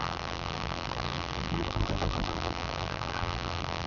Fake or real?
fake